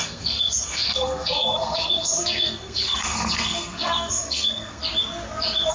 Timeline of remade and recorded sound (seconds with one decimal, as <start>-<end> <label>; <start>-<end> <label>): 0.0-4.8 remade; 4.8-5.7 recorded